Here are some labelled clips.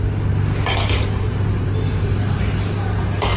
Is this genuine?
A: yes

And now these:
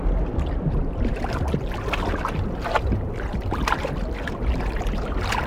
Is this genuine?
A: yes